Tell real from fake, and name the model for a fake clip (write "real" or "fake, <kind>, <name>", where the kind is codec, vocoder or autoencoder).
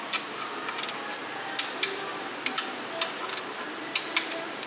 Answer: real